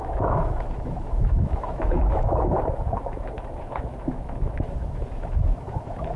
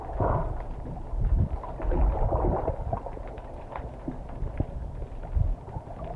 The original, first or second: second